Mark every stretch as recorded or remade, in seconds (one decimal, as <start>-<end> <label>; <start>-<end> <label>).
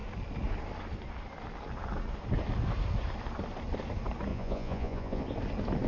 0.0-4.3 recorded; 4.3-5.2 remade; 5.2-5.9 recorded